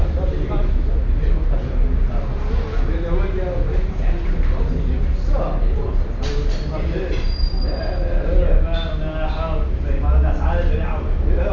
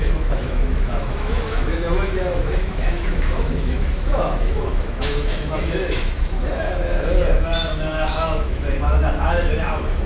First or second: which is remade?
second